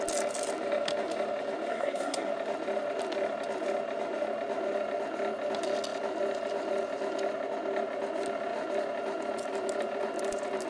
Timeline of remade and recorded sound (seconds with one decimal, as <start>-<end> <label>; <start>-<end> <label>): 0.0-1.7 recorded; 1.7-2.3 remade; 2.3-10.7 recorded

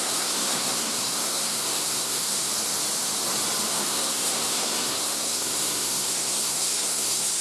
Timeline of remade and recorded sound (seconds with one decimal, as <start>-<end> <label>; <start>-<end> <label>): 0.0-2.5 remade; 2.5-3.7 recorded; 3.7-7.4 remade